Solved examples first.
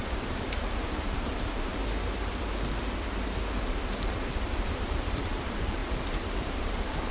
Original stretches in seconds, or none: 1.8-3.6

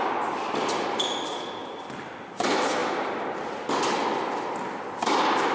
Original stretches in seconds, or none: 0.0-1.6; 2.1-5.5

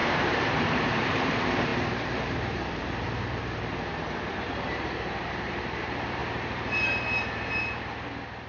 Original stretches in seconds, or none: none

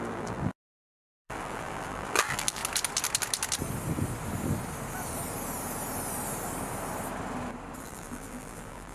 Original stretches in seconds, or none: 2.6-7.8

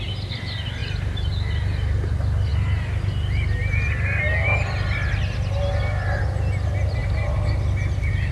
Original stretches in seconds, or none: 0.0-0.8; 1.3-7.0